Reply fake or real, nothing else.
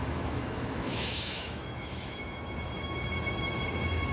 fake